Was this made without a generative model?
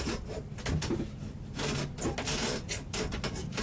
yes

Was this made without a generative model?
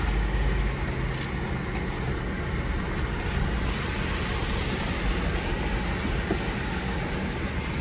yes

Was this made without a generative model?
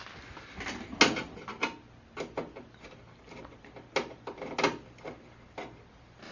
yes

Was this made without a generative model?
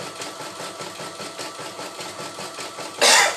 yes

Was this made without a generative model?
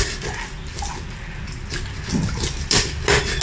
yes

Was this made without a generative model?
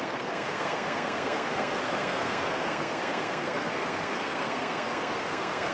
no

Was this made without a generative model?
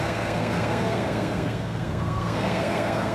no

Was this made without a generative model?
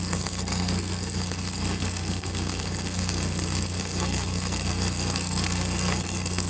no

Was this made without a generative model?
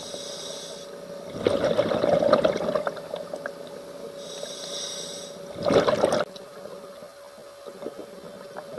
yes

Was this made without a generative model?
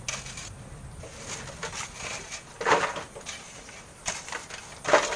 yes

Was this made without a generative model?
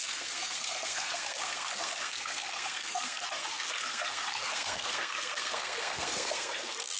no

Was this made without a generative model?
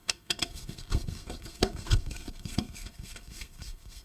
no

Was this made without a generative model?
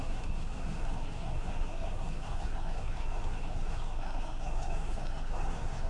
no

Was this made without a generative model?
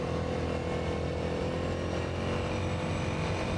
yes